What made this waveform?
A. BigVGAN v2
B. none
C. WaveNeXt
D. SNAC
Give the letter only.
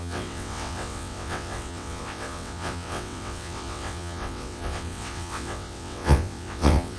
C